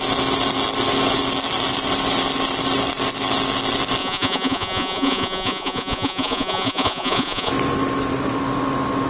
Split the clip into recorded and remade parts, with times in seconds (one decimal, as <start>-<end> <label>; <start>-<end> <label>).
0.0-4.0 recorded; 4.0-7.5 remade; 7.5-9.1 recorded